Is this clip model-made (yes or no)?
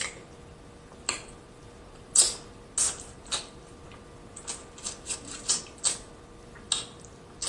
no